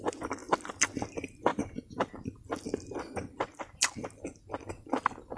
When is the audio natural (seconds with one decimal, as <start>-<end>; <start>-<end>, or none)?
0.0-5.4